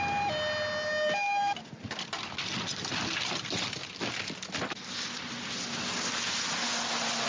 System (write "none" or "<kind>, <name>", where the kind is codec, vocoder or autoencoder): none